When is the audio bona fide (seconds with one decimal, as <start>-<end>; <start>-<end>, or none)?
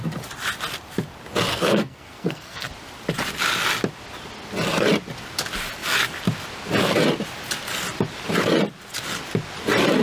0.0-1.5; 2.7-10.0